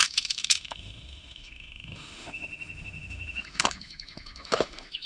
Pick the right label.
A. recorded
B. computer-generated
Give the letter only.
B